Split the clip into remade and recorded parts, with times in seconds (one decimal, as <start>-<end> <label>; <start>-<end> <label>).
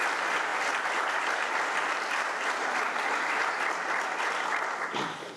0.0-5.4 recorded